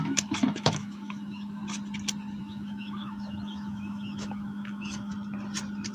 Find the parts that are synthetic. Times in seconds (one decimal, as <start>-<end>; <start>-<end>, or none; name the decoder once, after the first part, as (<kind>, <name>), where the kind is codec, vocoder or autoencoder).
0.0-1.6 (autoencoder, DAC-VAE); 2.4-5.1